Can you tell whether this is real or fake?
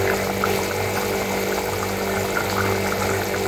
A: real